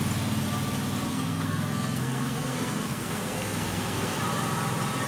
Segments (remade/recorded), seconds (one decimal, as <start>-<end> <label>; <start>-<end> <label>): 0.0-1.1 recorded; 1.1-4.2 remade; 4.2-5.1 recorded